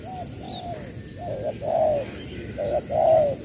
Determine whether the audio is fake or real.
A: real